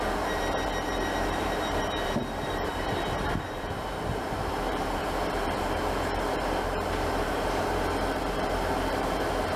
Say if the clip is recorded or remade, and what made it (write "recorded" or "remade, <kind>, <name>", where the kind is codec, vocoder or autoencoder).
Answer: remade, vocoder, BigVGAN v2